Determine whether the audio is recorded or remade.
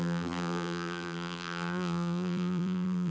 remade